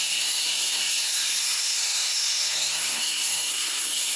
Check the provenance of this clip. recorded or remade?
remade